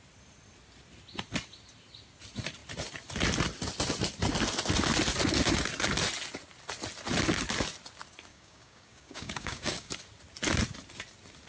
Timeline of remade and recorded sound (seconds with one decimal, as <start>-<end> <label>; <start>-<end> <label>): 0.0-8.3 recorded; 8.3-9.9 remade; 9.9-11.5 recorded